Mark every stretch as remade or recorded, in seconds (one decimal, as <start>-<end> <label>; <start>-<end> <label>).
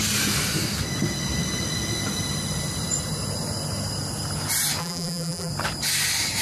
0.0-4.8 recorded; 4.8-5.5 remade; 5.5-6.4 recorded